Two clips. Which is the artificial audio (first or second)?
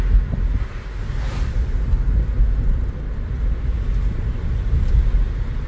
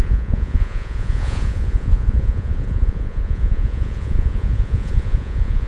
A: second